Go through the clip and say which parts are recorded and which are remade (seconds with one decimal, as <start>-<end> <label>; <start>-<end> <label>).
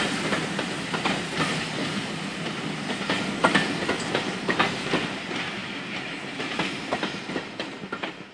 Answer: 0.0-1.8 recorded; 1.8-2.6 remade; 2.6-5.6 recorded; 5.6-7.5 remade; 7.5-8.3 recorded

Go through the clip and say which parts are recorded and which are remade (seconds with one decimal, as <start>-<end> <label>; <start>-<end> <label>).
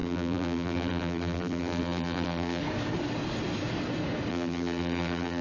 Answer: 0.0-2.6 remade; 2.6-4.3 recorded; 4.3-5.4 remade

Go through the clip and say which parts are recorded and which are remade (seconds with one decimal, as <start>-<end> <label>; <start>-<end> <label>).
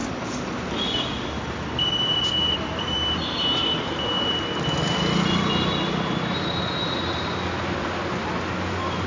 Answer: 0.0-5.0 remade; 5.0-9.1 recorded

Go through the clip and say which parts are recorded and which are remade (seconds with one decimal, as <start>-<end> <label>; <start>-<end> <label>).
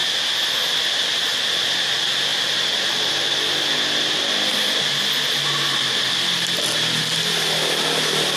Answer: 0.0-8.4 recorded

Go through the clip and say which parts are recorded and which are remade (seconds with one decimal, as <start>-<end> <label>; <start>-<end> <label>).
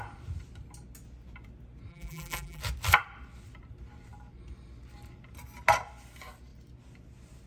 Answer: 0.0-1.9 recorded; 1.9-2.6 remade; 2.6-7.5 recorded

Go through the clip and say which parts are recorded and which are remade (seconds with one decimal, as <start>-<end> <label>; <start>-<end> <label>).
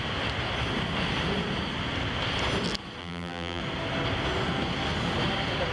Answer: 0.0-3.0 recorded; 3.0-3.6 remade; 3.6-5.7 recorded